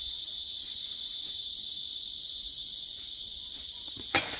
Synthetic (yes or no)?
yes